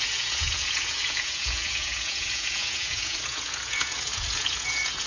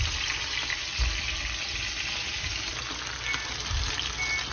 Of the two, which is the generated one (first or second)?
first